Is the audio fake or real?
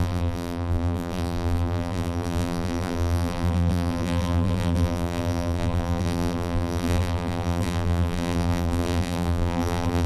fake